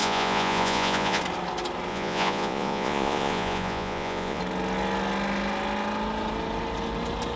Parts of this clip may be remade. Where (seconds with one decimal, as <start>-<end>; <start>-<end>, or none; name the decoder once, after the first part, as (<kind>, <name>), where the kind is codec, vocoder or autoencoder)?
0.0-1.2 (vocoder, Vocos); 1.9-4.4